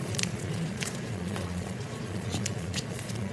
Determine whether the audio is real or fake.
fake